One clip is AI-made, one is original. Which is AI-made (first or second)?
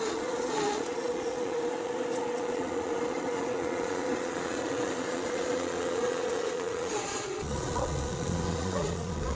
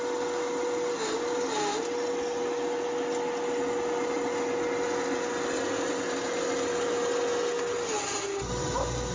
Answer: first